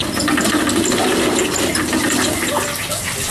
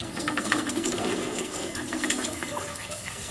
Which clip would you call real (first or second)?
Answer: first